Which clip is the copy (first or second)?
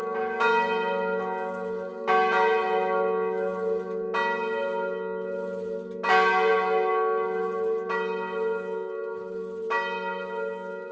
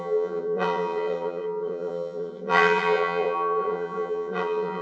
second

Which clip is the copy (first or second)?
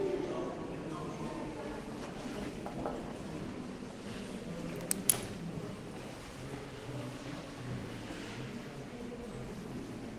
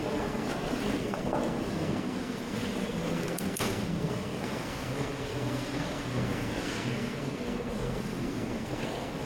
second